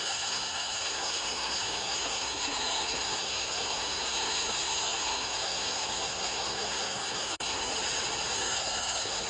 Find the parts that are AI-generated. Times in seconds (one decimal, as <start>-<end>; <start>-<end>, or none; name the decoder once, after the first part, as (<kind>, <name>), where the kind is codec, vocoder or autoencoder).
0.0-7.7 (codec, SNAC); 8.3-9.3

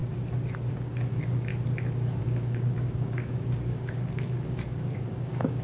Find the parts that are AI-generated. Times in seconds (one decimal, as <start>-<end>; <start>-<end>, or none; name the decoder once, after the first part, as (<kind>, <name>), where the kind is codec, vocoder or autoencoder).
0.7-1.5 (codec, DAC); 2.2-5.6

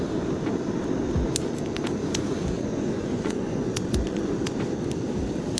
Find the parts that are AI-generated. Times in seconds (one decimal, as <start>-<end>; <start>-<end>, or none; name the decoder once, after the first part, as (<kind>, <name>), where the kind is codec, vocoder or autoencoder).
2.0-4.4 (vocoder, Vocos)